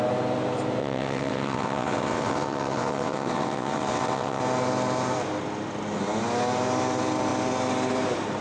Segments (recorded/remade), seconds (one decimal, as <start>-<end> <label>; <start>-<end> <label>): 0.0-0.8 recorded; 0.8-4.4 remade; 4.4-8.4 recorded

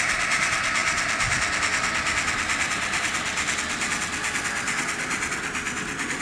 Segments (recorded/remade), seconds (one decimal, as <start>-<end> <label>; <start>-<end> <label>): 0.0-6.2 recorded